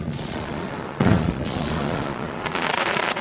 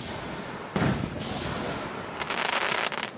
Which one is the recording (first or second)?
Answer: second